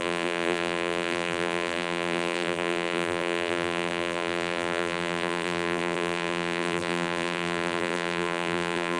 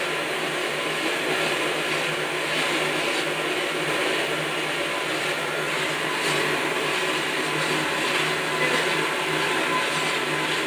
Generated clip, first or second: first